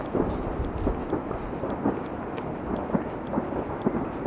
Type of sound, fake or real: real